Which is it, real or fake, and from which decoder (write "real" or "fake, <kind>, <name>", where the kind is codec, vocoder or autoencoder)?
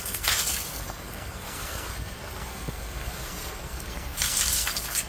fake, codec, SNAC